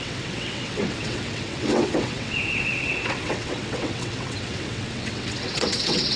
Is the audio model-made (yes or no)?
yes